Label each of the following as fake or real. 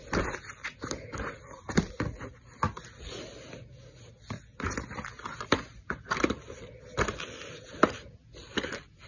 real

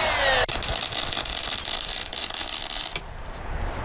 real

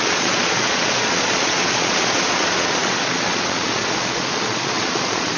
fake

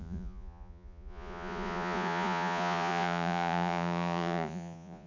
fake